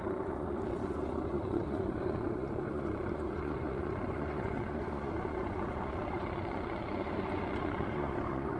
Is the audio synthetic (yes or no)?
yes